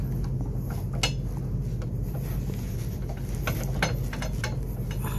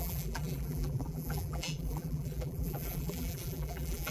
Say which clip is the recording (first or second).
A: first